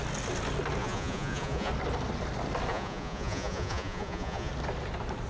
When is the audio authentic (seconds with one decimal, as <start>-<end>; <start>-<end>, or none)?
0.0-0.8; 1.7-2.7; 4.5-5.3